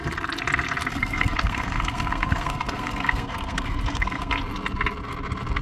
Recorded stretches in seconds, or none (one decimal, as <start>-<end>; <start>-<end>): 0.0-0.9; 4.3-5.6